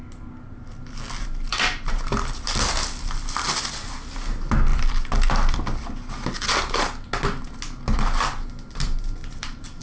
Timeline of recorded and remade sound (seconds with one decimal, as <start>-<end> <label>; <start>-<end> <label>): 0.0-1.5 recorded; 1.5-2.5 remade; 2.5-9.2 recorded; 9.2-9.8 remade